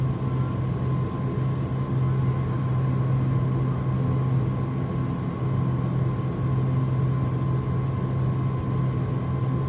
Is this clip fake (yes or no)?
no